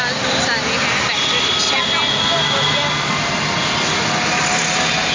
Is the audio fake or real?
real